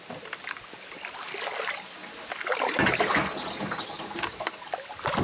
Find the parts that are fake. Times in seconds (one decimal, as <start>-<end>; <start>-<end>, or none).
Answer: none